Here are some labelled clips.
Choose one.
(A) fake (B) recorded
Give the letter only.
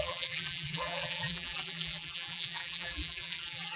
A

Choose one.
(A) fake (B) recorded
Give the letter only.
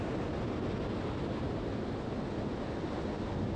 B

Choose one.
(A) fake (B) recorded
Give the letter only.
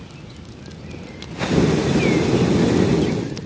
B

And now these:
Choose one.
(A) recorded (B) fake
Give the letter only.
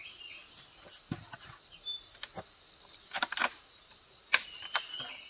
A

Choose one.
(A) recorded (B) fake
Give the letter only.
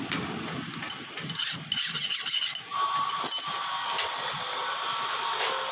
A